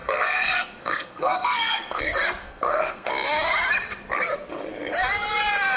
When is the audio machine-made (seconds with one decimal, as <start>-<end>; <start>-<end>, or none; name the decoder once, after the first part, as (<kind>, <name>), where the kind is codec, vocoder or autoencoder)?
0.0-2.0 (codec, SNAC); 2.4-3.1